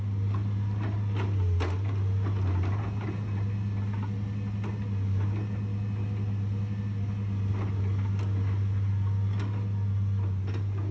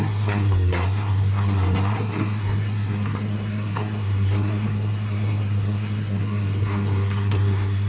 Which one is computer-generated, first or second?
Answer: second